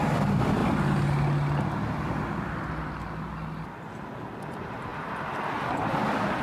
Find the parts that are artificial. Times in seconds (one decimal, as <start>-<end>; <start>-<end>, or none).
4.9-5.5